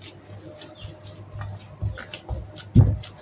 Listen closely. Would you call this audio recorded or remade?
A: recorded